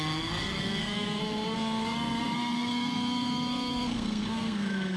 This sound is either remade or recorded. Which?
remade